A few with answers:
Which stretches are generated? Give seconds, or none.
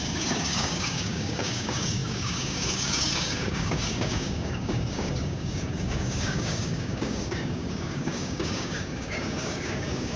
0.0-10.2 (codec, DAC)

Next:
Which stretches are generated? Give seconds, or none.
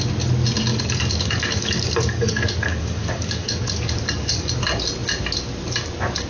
0.7-4.5 (codec, DAC)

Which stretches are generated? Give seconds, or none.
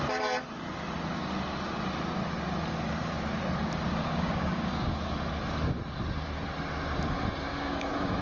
3.9-5.0 (codec, DAC); 7.5-8.2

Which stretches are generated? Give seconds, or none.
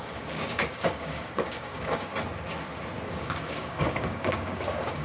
0.0-2.1 (codec, DAC); 3.0-5.0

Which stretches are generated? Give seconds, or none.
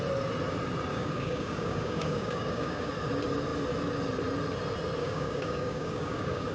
0.9-2.9 (codec, DAC); 5.0-6.5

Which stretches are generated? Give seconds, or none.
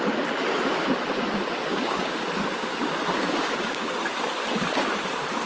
1.7-2.2 (codec, DAC); 2.7-3.9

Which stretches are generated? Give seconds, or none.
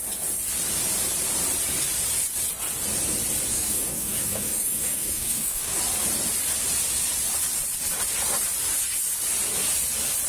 3.5-5.8 (codec, DAC)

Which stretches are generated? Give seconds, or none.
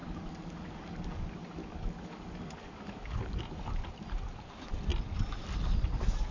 0.0-1.2 (codec, DAC); 1.6-3.4